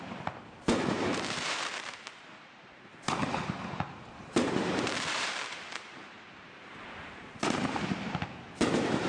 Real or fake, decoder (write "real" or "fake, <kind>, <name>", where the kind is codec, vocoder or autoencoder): fake, vocoder, BigVGAN v2